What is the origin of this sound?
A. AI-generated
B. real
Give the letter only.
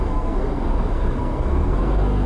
A